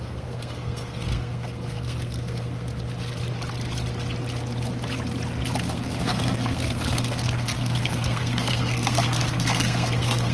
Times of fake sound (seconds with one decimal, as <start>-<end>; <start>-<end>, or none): 0.0-2.7; 5.6-10.3